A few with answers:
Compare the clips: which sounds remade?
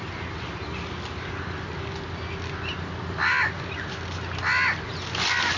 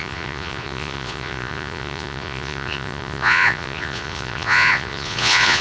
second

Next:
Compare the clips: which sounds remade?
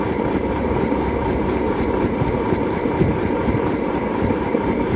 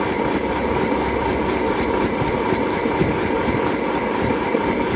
first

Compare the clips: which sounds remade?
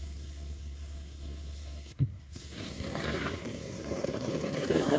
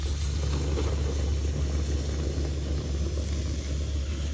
first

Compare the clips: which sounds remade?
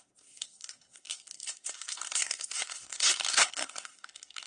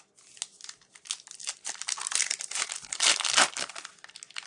first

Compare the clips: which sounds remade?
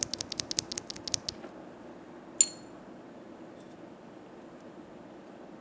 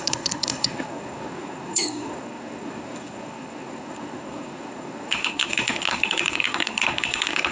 second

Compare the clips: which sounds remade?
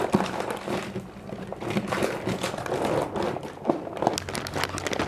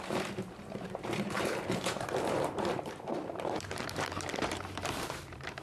second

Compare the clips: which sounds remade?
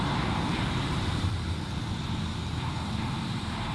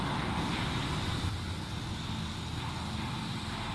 first